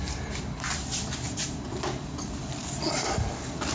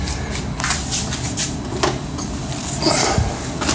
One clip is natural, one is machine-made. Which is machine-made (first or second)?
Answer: first